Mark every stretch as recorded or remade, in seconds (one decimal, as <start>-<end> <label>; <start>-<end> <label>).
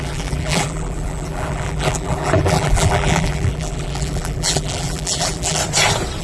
0.0-5.6 remade; 5.6-6.2 recorded